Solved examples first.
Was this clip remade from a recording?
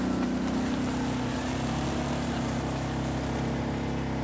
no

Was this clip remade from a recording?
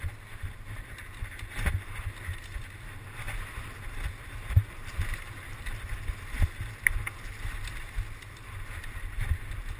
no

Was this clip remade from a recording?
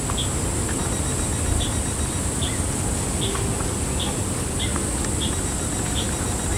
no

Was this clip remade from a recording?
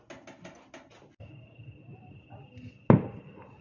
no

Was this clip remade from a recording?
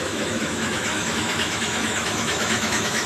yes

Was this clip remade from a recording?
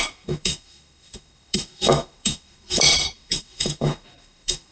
yes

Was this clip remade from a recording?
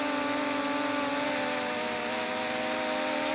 no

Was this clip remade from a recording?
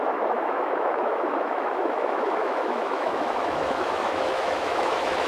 yes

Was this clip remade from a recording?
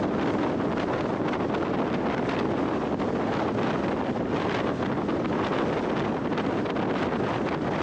no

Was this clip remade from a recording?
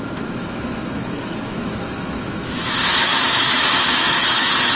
yes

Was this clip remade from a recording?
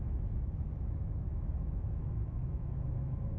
yes